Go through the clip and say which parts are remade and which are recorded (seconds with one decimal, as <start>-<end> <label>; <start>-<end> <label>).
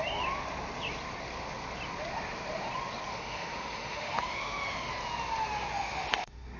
0.0-3.1 recorded; 3.1-4.9 remade; 4.9-5.7 recorded; 5.7-6.6 remade